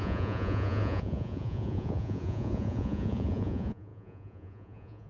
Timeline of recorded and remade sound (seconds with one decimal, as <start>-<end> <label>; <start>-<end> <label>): 0.0-5.1 remade